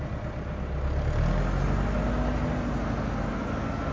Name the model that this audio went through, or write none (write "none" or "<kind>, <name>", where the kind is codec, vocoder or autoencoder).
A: none